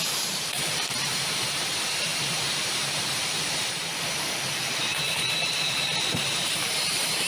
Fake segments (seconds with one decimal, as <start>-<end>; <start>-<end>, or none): 0.0-7.3